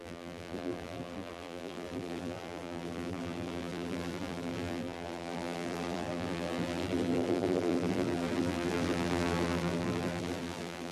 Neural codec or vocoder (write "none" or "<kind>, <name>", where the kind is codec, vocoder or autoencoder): vocoder, BigVGAN v2